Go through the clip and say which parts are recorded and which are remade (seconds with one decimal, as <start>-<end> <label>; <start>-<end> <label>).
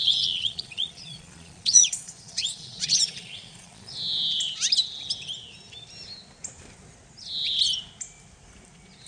0.0-3.9 remade; 3.9-9.1 recorded